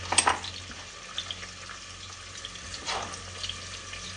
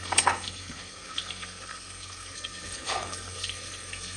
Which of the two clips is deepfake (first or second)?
second